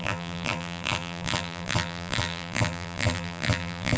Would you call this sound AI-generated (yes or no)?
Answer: yes